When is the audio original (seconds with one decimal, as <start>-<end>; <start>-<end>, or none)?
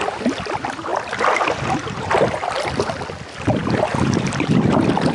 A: 0.0-3.6; 4.3-5.1